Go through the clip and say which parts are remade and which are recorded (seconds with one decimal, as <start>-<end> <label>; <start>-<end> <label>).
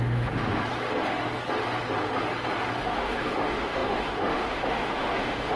0.0-0.6 remade; 0.6-2.8 recorded; 2.8-5.6 remade